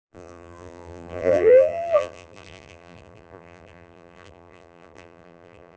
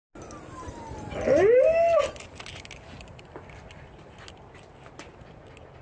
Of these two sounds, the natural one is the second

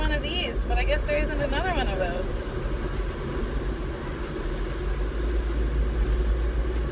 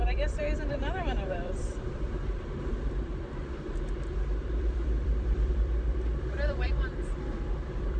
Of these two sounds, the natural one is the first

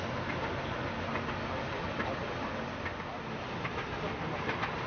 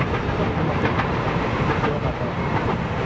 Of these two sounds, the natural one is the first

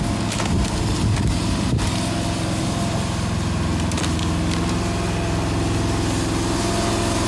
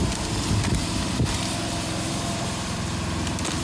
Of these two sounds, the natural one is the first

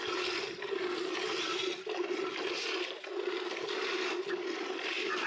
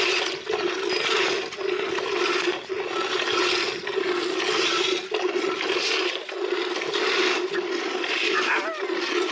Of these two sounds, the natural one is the second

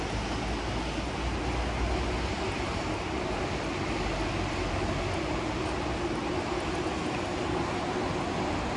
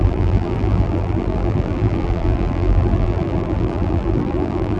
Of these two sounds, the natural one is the first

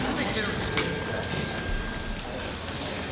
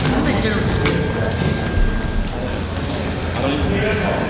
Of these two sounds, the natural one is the second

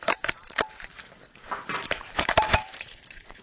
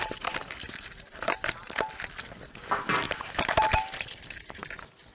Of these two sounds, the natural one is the second